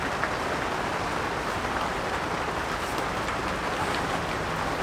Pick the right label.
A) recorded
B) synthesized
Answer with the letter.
A